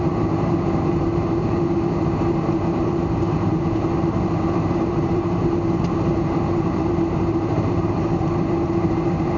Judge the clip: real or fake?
fake